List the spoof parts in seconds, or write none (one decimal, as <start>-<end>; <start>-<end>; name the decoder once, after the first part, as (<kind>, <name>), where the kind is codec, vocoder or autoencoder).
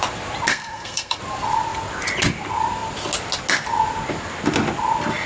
0.5-1.2 (codec, SNAC)